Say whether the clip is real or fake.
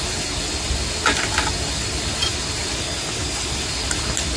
real